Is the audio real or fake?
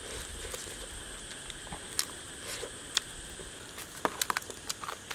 real